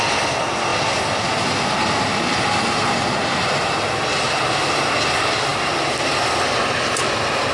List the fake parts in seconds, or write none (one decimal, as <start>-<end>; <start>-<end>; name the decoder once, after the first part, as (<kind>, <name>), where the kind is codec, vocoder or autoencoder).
none